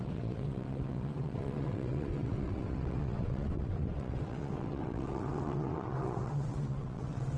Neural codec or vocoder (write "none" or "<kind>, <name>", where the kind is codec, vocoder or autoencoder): vocoder, WaveNeXt